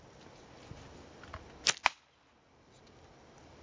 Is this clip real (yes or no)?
yes